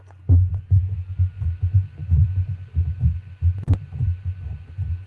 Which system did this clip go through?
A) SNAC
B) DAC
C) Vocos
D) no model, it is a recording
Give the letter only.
C